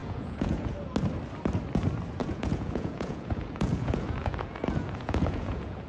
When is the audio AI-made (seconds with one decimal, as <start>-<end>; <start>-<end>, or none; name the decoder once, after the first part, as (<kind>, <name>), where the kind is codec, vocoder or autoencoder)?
0.0-0.7 (vocoder, Vocos); 2.2-5.9